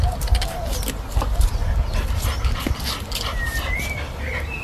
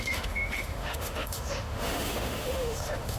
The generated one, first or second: second